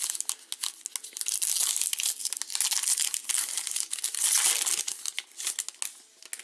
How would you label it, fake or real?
real